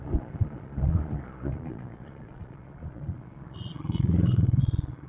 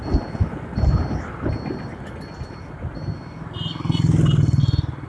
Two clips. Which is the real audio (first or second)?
second